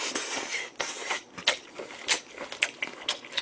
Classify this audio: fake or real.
real